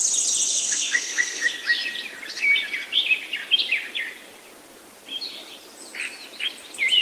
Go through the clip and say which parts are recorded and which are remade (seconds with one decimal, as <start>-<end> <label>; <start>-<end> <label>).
0.0-0.5 recorded; 0.5-1.5 remade; 1.5-7.0 recorded